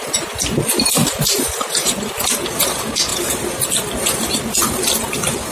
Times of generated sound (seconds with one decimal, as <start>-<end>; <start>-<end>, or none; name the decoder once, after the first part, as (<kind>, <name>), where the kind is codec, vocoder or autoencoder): 1.0-2.1 (vocoder, BigVGAN v2)